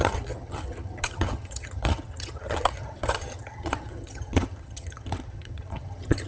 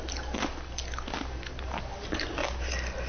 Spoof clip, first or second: first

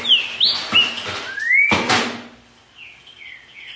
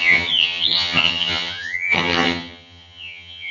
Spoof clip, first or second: second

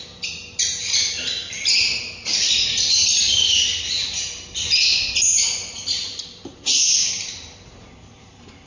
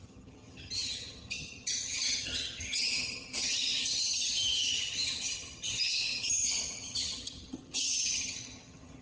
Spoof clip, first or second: second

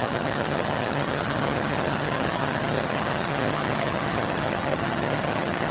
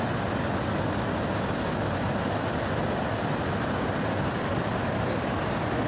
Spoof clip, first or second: first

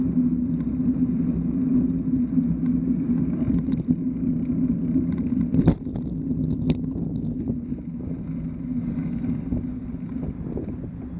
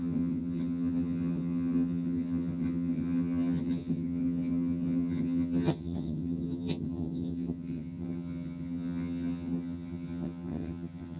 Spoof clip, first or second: second